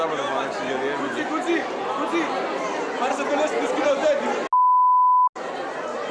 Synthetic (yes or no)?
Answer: no